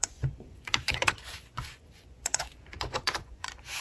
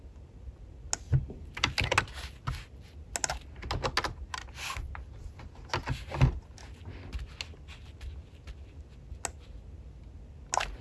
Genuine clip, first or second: second